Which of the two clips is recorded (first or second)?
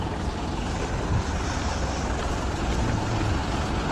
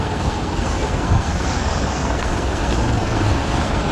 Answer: first